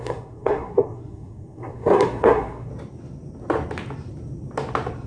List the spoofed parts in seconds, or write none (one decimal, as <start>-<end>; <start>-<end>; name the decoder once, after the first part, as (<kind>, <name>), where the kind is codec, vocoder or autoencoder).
0.0-2.7 (codec, SNAC)